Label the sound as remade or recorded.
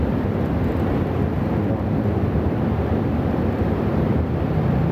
remade